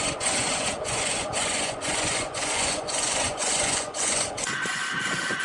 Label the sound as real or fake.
fake